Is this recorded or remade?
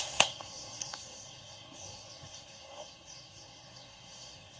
remade